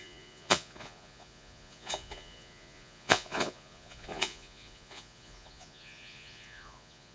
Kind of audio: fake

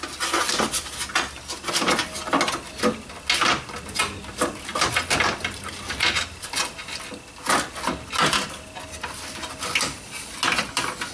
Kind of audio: real